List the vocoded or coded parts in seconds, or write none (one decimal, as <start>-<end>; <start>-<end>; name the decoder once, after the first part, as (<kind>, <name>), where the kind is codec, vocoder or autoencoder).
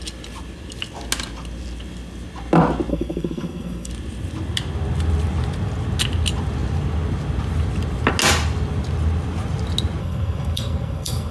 2.9-3.9 (codec, SNAC); 10.0-11.3